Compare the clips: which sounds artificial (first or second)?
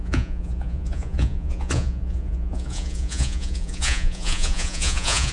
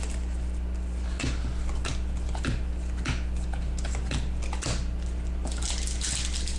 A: first